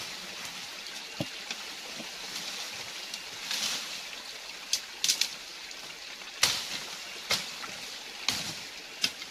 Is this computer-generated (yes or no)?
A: no